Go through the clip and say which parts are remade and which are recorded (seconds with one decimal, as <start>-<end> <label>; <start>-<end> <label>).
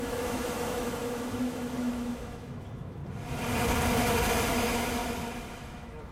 0.0-3.0 remade; 3.0-4.5 recorded; 4.5-5.0 remade; 5.0-5.5 recorded; 5.5-6.1 remade